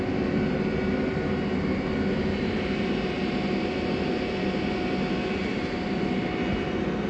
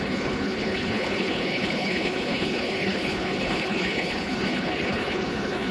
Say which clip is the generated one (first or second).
second